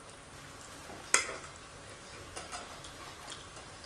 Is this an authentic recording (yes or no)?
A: yes